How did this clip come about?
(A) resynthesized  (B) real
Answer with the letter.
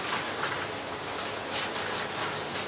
B